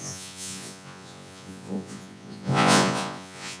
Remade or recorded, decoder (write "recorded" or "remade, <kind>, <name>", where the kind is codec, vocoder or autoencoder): remade, vocoder, Vocos